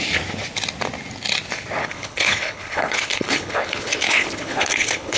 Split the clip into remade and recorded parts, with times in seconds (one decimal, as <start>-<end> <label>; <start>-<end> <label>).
0.0-1.8 recorded; 1.8-5.2 remade